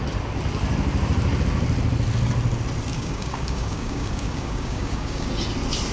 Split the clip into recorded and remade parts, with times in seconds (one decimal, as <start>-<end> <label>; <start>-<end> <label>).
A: 0.0-2.9 recorded; 2.9-5.3 remade; 5.3-5.9 recorded